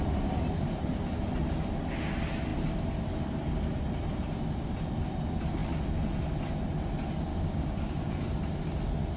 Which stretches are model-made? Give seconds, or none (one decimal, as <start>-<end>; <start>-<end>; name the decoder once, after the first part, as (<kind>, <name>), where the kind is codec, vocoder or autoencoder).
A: 7.3-8.1 (codec, DAC)